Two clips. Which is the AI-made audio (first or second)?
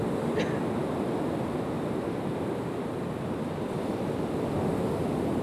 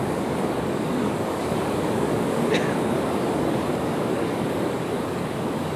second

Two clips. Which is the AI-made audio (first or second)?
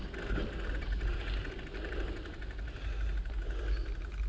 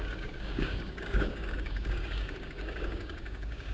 second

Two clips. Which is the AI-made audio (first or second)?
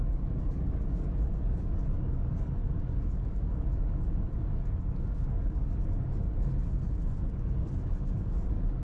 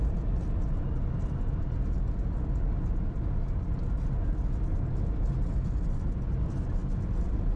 first